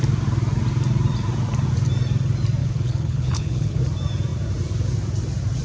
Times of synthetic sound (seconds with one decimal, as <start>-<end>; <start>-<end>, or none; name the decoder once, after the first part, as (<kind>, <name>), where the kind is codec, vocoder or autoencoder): 2.6-3.8 (codec, HILCodec)